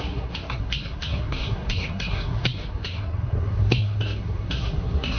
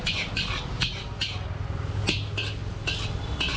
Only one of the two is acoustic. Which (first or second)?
second